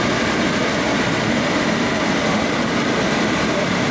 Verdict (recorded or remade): remade